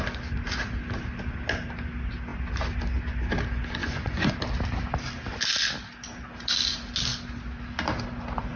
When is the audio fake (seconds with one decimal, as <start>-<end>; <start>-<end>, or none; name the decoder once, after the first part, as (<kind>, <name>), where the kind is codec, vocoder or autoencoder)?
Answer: 3.8-4.3 (vocoder, Vocos)